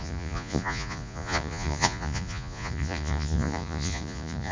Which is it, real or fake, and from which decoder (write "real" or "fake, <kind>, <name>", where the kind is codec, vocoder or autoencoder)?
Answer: fake, vocoder, Vocos